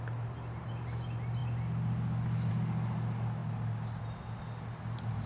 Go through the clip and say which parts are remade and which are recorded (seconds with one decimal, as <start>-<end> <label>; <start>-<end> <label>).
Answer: 0.0-5.3 recorded